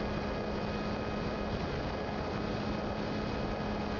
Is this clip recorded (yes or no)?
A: yes